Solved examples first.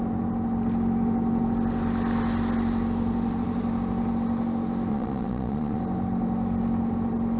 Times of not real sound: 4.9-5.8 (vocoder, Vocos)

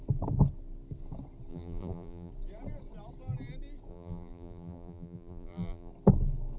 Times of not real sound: 1.5-2.3 (vocoder, BigVGAN v2); 3.9-5.9

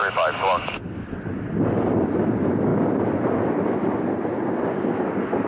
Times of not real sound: none

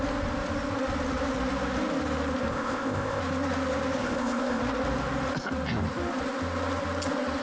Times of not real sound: 2.5-3.2 (codec, ZipCodec); 4.0-4.6

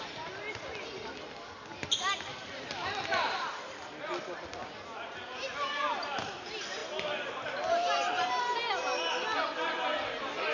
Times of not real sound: none